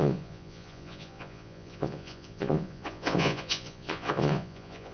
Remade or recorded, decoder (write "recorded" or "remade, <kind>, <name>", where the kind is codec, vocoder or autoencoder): remade, vocoder, Vocos